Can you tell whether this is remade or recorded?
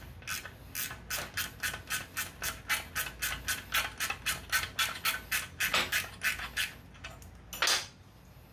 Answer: recorded